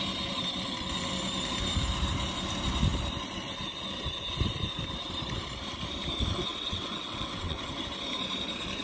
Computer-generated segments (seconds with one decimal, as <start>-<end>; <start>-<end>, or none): 6.5-7.6